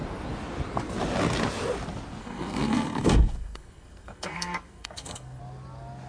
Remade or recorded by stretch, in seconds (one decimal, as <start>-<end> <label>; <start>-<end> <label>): 0.0-2.2 recorded; 2.2-5.4 remade; 5.4-6.1 recorded